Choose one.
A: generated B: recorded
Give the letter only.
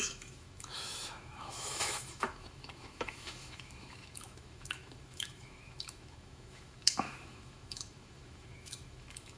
A